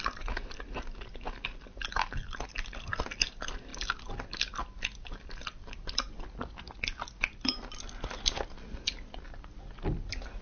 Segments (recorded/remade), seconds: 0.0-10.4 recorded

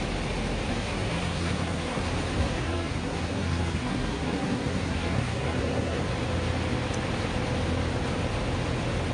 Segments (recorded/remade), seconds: 0.0-0.7 recorded; 0.7-2.0 remade; 2.0-2.4 recorded; 2.4-6.0 remade; 6.0-9.1 recorded